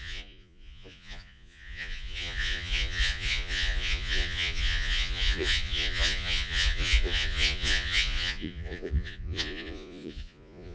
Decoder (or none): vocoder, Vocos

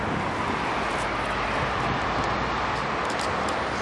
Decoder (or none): none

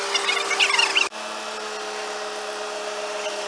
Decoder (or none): none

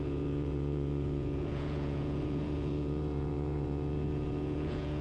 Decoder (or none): vocoder, Vocos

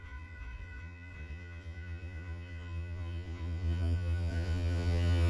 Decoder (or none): vocoder, Vocos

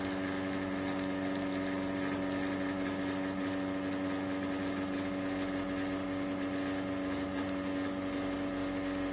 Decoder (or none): none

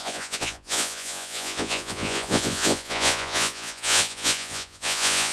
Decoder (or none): vocoder, Vocos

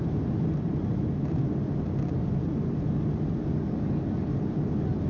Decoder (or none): none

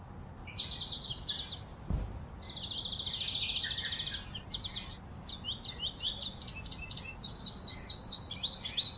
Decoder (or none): none